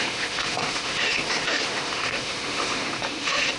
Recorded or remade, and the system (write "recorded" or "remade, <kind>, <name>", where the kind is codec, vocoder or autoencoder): remade, autoencoder, DAC-VAE